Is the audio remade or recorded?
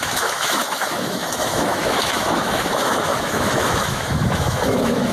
remade